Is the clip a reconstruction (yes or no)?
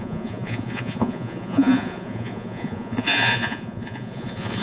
yes